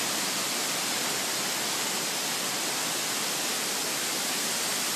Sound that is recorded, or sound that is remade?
recorded